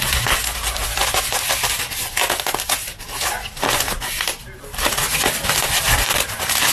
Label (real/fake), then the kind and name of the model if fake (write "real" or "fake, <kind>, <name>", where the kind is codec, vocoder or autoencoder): real